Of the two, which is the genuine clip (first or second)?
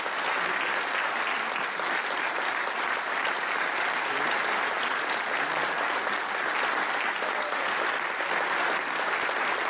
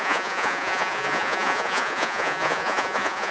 first